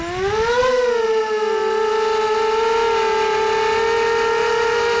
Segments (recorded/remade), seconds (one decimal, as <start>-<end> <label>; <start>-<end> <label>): 0.0-0.6 recorded; 0.6-1.9 remade; 1.9-4.4 recorded; 4.4-5.0 remade